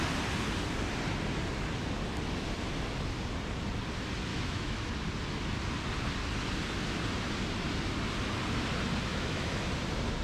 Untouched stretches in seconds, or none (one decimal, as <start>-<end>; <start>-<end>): 0.0-4.3; 4.9-9.1; 9.7-10.2